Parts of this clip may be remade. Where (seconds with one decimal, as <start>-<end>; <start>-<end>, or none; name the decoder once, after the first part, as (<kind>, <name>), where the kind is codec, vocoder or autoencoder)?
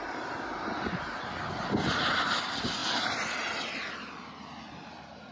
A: none